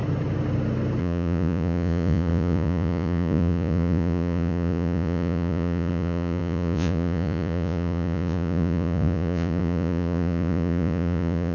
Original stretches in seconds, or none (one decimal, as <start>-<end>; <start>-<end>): 0.0-1.0